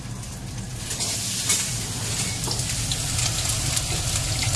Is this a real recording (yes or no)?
yes